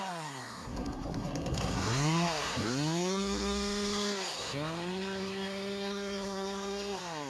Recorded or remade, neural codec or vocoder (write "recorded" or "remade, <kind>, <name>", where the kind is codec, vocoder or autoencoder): remade, codec, SNAC